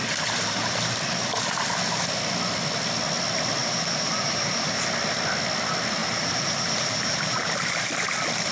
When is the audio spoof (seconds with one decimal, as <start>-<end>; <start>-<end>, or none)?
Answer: 0.0-1.0; 3.6-4.8; 6.0-7.5

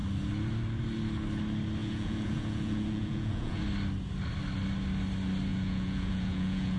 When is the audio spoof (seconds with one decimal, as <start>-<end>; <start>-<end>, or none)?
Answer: 1.8-3.6; 5.5-6.8

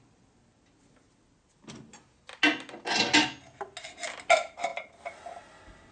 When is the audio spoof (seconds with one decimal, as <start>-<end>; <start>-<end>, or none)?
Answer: none

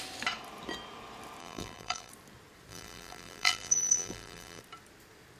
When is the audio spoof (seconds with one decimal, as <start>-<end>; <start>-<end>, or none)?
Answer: 1.4-2.1; 2.7-4.6

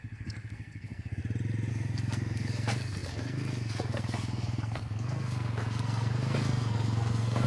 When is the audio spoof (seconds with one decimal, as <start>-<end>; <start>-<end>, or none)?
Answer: 0.0-1.2; 1.7-7.5

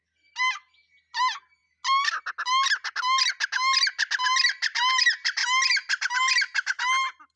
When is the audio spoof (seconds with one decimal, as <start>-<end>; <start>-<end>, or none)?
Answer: none

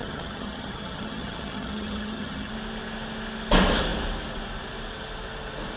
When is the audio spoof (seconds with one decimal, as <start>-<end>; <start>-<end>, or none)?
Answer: 0.0-2.5

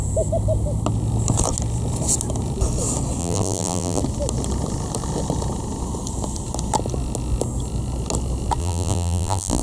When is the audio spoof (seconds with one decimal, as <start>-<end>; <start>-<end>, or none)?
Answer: 3.2-4.0; 8.6-9.6